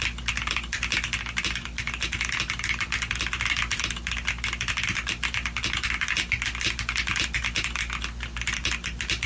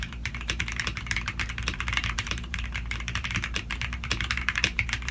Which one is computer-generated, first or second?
second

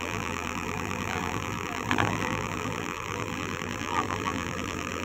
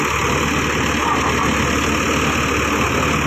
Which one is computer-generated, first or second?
first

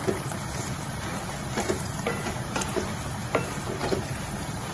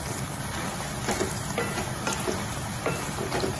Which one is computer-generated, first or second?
first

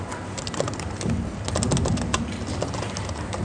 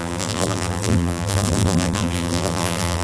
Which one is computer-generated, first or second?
second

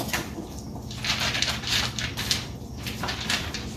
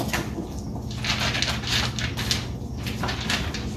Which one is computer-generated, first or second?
first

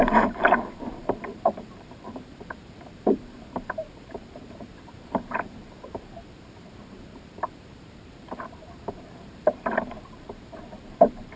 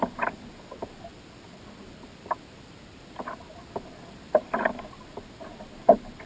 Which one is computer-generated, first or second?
first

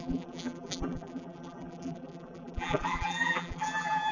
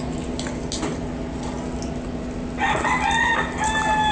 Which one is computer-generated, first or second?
first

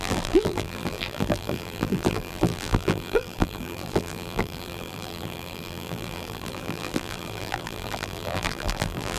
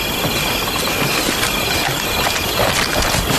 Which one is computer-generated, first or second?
first